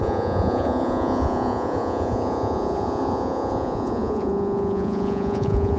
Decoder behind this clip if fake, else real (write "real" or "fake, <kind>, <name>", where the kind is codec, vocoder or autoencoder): fake, vocoder, Vocos